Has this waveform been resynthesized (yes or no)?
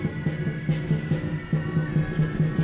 no